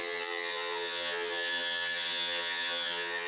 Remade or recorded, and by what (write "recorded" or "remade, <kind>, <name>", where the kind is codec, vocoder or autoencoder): remade, vocoder, HiFi-GAN